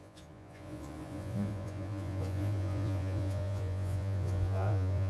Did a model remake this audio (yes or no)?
yes